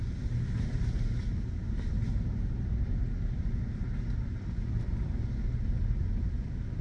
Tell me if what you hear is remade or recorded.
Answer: recorded